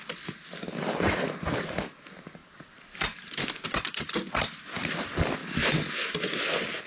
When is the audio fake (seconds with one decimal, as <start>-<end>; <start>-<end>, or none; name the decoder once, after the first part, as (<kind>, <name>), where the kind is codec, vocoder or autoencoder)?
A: none

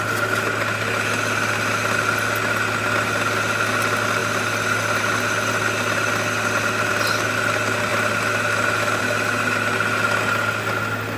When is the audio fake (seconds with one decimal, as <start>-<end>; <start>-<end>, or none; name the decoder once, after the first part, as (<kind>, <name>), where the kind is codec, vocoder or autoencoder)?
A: none